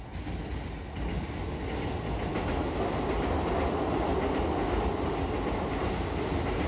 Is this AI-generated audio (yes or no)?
no